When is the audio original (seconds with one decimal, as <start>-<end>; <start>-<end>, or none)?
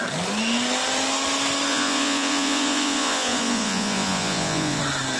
0.0-1.7; 4.8-5.2